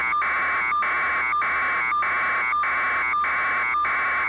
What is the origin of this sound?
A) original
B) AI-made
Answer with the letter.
A